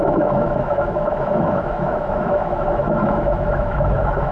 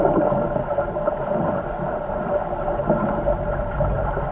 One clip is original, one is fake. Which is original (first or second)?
second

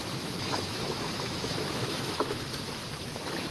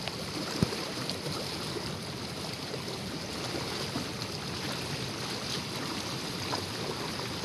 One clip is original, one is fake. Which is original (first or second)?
second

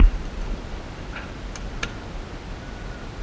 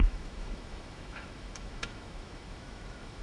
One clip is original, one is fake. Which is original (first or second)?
first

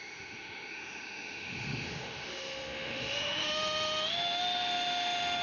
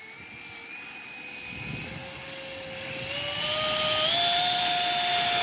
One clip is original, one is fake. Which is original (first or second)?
second